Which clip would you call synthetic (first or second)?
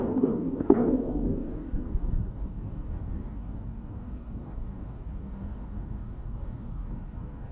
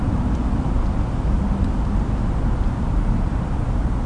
first